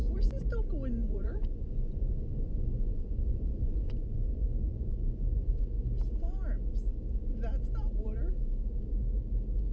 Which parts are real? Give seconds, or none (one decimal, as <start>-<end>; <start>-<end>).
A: 0.0-1.0; 5.6-9.7